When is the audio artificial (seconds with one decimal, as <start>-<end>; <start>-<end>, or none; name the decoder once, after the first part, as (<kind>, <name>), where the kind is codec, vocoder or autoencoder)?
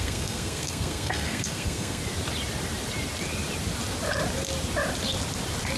0.0-2.0 (codec, SNAC)